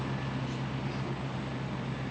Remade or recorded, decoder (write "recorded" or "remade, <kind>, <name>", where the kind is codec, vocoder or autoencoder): recorded